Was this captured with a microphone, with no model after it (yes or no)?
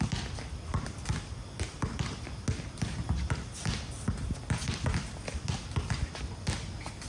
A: yes